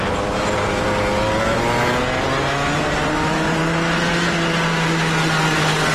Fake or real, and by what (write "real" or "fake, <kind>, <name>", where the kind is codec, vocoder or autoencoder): real